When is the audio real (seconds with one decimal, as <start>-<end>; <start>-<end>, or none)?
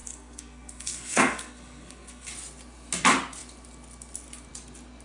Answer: 2.3-5.0